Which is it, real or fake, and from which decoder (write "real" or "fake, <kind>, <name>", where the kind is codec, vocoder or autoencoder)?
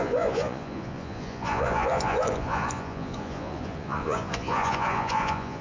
fake, vocoder, Vocos